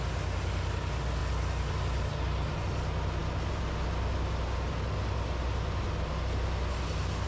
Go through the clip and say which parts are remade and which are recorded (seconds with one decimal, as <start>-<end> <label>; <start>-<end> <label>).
0.0-7.3 recorded